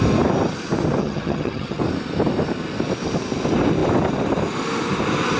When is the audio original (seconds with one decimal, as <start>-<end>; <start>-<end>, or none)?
0.0-1.0; 1.8-5.4